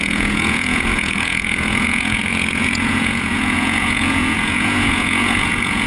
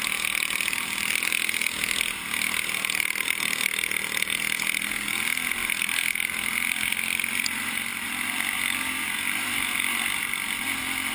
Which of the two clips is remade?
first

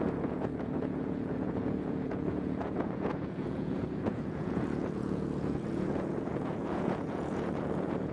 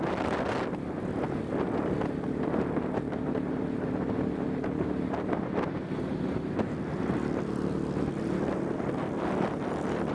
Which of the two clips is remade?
first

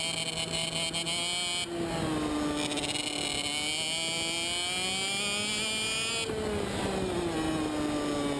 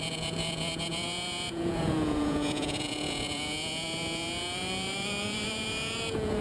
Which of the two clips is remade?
second